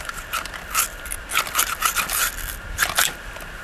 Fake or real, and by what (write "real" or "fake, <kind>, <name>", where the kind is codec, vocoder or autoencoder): real